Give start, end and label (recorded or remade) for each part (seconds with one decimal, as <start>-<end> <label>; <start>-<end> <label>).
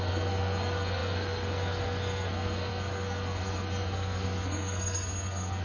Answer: 0.0-5.6 remade